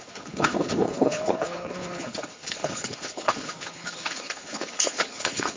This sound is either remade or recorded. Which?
remade